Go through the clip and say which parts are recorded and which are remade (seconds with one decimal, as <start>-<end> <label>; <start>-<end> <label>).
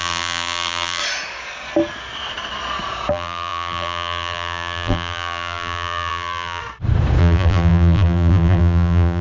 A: 0.0-1.0 remade; 1.0-3.1 recorded; 3.1-6.6 remade; 6.6-7.2 recorded; 7.2-9.2 remade